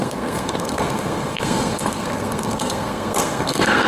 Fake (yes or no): yes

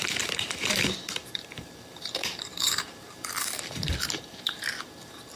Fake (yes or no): yes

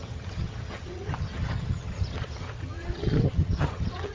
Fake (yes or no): yes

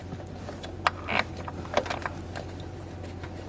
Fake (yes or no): no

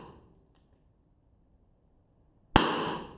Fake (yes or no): no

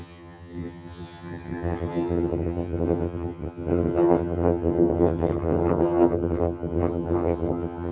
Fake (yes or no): yes